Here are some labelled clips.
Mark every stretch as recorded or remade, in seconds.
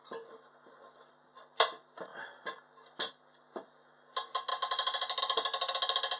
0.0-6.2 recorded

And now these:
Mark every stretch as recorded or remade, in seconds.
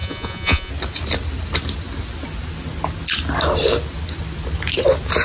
0.0-0.7 remade; 0.7-5.2 recorded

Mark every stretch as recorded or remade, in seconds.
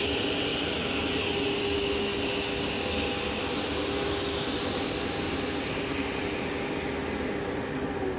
0.0-8.2 recorded